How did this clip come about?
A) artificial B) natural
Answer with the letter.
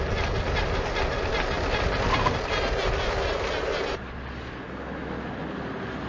B